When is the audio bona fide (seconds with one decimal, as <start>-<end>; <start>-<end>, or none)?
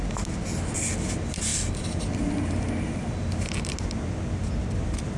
0.0-5.2